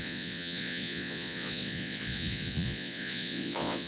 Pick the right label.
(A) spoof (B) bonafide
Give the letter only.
A